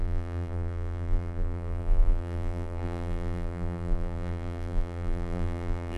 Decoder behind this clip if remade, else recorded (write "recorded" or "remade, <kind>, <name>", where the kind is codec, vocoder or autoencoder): remade, vocoder, BigVGAN v2